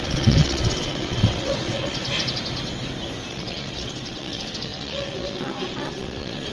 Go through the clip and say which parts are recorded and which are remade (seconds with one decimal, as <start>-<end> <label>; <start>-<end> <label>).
0.0-2.0 remade; 2.0-3.3 recorded; 3.3-6.5 remade